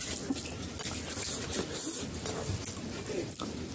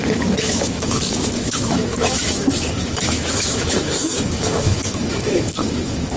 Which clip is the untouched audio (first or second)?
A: first